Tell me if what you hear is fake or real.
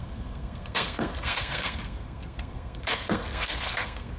fake